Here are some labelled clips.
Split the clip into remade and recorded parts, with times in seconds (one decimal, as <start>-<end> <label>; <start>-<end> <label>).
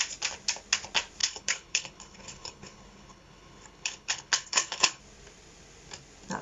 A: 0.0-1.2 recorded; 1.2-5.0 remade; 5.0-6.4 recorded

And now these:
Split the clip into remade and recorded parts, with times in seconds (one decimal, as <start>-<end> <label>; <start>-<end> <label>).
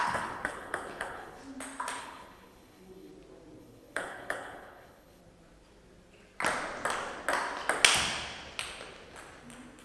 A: 0.0-1.4 remade; 1.4-2.0 recorded; 2.0-3.1 remade; 3.1-3.6 recorded; 3.6-5.2 remade; 5.2-9.8 recorded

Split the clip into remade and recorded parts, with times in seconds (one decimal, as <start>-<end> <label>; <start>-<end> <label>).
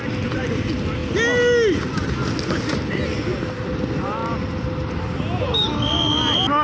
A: 0.0-6.6 recorded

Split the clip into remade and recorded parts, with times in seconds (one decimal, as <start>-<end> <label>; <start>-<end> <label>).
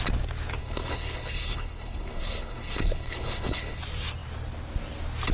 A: 0.0-0.6 recorded; 0.6-3.8 remade; 3.8-5.3 recorded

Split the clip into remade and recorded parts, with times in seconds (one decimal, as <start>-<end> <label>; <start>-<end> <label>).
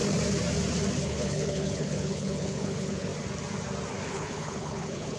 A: 0.0-1.0 recorded; 1.0-3.1 remade; 3.1-4.1 recorded; 4.1-5.2 remade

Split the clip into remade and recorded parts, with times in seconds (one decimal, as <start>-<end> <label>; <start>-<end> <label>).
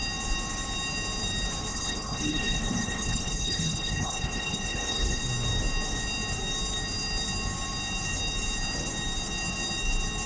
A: 0.0-1.7 recorded; 1.7-5.2 remade; 5.2-10.3 recorded